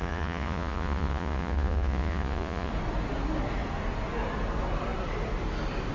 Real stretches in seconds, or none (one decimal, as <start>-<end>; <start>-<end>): 2.7-5.9